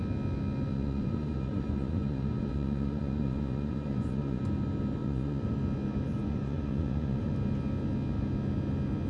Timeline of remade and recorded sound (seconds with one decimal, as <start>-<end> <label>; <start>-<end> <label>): 0.0-0.7 recorded; 0.7-4.4 remade; 4.4-5.0 recorded; 5.0-5.6 remade; 5.6-6.1 recorded; 6.1-7.3 remade; 7.3-9.1 recorded